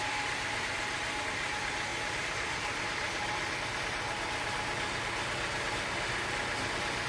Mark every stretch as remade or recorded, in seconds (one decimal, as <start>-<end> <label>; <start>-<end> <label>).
0.0-1.9 recorded; 1.9-3.6 remade; 3.6-7.1 recorded